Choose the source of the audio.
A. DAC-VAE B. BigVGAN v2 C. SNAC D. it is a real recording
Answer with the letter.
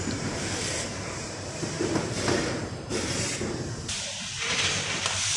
B